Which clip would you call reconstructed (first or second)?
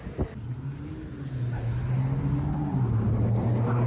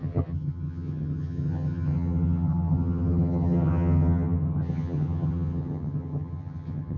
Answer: second